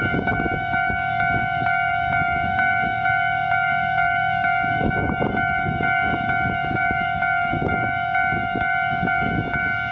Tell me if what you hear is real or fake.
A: fake